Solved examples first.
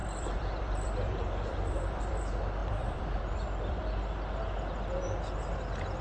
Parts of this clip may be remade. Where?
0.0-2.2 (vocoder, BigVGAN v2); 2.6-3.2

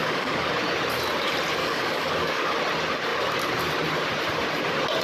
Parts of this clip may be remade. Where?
0.0-0.5 (codec, DAC); 1.6-2.6

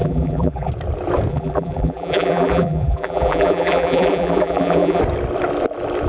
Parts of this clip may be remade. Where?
0.0-0.7 (vocoder, BigVGAN v2); 1.3-5.0

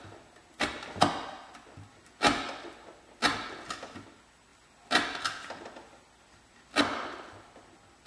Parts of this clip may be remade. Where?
none